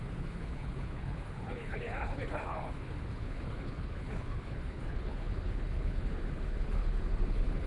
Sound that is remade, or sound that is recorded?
remade